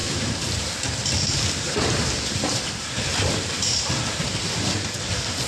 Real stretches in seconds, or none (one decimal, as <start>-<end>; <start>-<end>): 2.6-3.1; 5.1-5.5